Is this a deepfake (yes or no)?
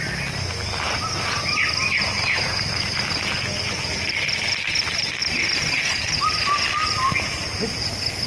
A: no